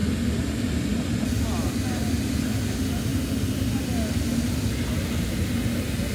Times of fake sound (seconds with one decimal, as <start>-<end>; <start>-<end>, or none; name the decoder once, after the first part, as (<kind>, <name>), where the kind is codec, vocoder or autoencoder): none